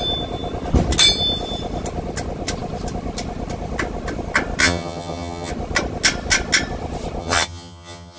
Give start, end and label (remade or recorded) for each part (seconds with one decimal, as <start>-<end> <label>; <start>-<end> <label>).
0.0-4.6 recorded; 4.6-5.5 remade; 5.5-7.2 recorded; 7.2-8.2 remade